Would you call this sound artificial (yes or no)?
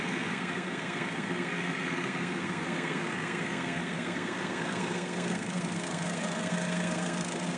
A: yes